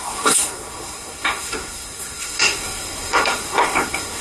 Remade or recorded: remade